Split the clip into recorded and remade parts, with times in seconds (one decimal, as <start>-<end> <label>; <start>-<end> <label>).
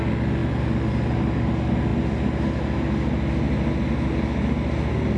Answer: 0.0-5.2 recorded